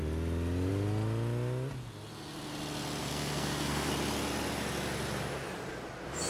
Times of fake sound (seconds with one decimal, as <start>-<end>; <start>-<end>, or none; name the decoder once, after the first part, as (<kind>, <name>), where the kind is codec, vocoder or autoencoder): 3.0-3.9 (codec, SNAC)

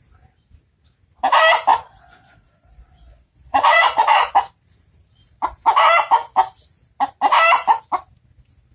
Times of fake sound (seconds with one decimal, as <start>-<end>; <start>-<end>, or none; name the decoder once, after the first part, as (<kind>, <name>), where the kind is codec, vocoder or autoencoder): 1.7-4.3 (vocoder, Vocos)

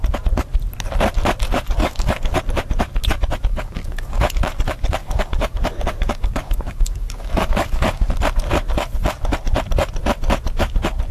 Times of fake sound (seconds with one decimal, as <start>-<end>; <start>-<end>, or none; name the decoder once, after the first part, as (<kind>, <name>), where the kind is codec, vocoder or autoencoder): 1.8-2.4 (codec, DAC); 3.5-4.3; 5.0-8.1

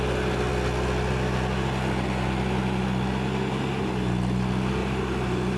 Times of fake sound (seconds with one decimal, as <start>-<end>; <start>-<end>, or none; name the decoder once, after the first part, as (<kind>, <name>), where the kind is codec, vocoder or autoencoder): 4.8-5.6 (vocoder, BigVGAN v2)

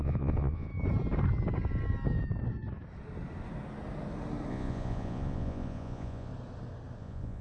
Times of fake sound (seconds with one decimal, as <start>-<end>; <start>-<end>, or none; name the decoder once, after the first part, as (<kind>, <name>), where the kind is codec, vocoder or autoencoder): 0.0-0.7 (vocoder, Vocos); 4.5-6.3; 7.0-7.4

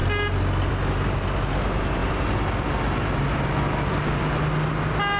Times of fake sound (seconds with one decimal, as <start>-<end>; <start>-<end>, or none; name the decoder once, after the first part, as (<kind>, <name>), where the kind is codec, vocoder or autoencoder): none

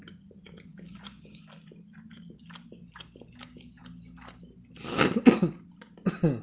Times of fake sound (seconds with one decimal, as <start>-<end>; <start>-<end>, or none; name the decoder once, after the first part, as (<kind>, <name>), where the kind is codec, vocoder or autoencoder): 0.7-1.4 (codec, DAC)